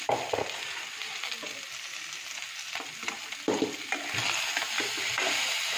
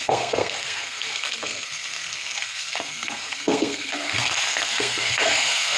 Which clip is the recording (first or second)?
first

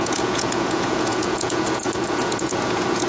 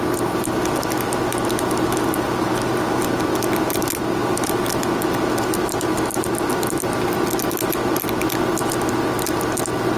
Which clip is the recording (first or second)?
second